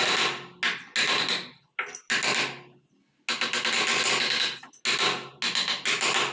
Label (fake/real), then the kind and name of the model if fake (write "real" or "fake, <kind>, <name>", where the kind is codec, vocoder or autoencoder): real